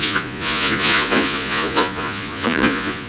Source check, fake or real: fake